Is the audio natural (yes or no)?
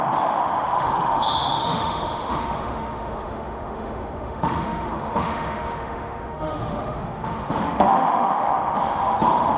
no